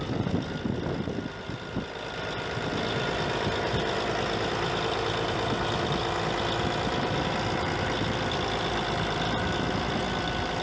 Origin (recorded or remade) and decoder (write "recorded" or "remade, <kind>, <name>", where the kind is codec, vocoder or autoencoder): recorded